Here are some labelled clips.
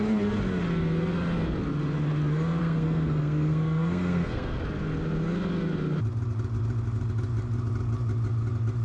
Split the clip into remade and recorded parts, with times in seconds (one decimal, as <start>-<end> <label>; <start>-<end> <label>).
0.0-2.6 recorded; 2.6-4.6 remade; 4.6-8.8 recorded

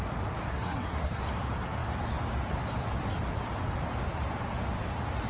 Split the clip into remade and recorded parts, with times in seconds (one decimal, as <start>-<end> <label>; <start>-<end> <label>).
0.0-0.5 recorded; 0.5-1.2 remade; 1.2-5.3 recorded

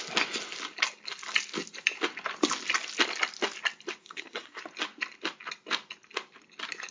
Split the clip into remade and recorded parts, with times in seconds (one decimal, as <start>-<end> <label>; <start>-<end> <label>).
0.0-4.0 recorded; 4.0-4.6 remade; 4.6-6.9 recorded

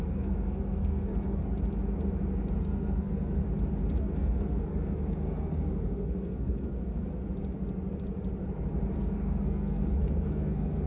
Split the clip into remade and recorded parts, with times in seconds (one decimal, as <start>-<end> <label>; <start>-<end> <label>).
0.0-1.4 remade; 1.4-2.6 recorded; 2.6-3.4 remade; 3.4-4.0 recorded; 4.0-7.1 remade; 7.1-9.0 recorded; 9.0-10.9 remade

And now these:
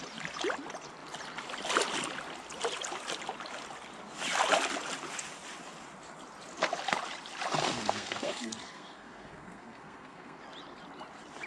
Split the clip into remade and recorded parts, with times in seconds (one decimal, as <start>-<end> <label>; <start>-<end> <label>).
0.0-7.6 recorded; 7.6-10.4 remade; 10.4-11.5 recorded